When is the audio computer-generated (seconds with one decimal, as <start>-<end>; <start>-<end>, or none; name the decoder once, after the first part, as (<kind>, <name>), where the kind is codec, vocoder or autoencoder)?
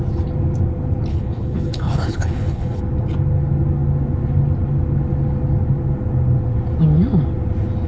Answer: 1.1-2.8 (codec, HILCodec)